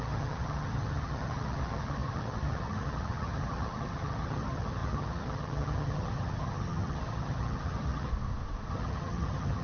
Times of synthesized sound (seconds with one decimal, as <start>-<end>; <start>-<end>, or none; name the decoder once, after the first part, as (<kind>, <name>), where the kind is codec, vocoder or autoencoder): 0.0-8.1 (vocoder, HiFi-GAN); 8.7-9.6

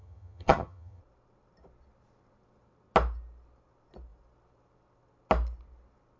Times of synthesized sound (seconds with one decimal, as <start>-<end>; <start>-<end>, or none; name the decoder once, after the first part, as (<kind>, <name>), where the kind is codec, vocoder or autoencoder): 0.0-1.0 (vocoder, HiFi-GAN)

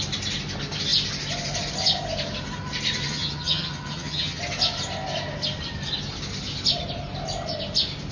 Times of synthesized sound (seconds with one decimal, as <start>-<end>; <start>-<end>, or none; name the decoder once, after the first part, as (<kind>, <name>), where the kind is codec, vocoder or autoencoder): 3.0-4.4 (vocoder, HiFi-GAN)

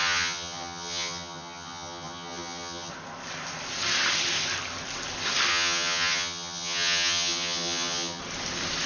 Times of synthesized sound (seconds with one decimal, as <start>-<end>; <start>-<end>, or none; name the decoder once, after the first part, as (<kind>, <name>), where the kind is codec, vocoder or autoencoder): 0.0-2.9 (vocoder, HiFi-GAN); 5.5-8.2

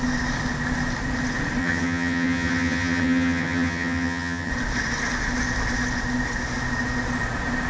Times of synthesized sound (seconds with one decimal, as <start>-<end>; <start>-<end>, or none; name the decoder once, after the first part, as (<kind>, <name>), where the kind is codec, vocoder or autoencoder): 1.6-4.5 (vocoder, HiFi-GAN)